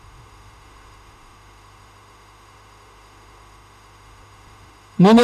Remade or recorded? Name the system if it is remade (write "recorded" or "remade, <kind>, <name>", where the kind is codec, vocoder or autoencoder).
remade, autoencoder, DAC-VAE